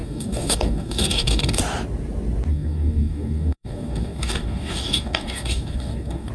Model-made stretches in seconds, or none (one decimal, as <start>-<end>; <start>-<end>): 0.0-1.6; 2.5-6.3